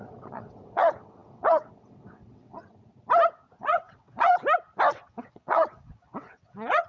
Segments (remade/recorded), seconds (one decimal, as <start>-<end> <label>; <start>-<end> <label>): 0.0-2.6 remade; 2.6-3.6 recorded; 3.6-4.3 remade; 4.3-4.9 recorded; 4.9-6.9 remade